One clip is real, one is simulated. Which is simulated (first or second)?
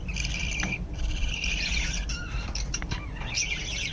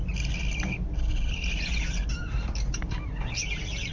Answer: first